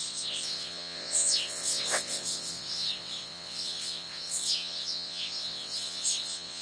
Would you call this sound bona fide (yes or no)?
no